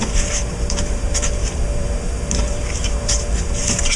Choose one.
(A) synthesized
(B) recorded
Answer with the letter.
A